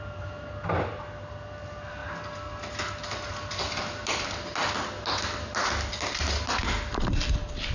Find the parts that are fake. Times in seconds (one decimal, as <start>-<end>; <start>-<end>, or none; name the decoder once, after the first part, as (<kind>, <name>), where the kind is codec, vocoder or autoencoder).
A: none